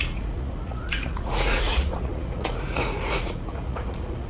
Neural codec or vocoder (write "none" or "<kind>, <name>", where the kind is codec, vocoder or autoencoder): vocoder, Vocos